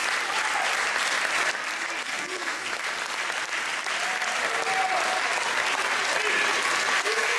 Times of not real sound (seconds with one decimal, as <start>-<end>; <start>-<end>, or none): 2.0-2.6; 7.0-7.4

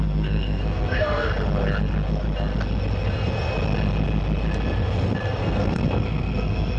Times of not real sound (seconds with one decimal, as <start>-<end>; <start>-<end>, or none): 0.0-1.3; 5.4-6.8